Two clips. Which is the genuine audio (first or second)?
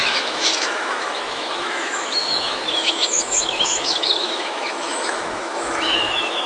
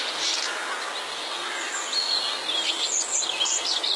second